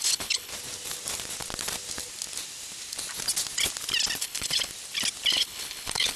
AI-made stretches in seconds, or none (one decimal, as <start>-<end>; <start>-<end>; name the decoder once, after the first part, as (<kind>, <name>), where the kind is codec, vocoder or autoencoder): 0.0-0.5 (codec, HILCodec); 4.2-4.7; 5.3-6.2